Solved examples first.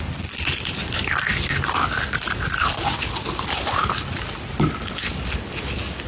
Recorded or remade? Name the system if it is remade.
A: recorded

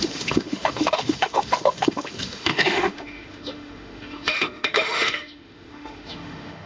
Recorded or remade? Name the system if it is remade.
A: remade, autoencoder, DAC-VAE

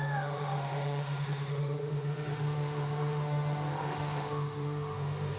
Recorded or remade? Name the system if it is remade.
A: remade, autoencoder, DAC-VAE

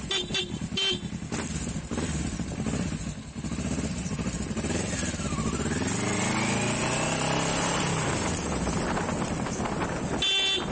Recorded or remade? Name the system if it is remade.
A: recorded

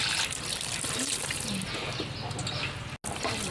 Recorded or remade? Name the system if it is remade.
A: recorded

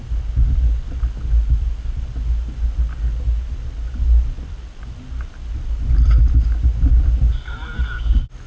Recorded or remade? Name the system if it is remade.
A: recorded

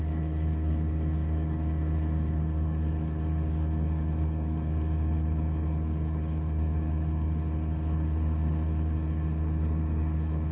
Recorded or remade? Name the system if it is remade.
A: remade, codec, HILCodec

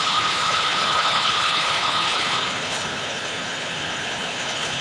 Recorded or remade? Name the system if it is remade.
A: remade, codec, HILCodec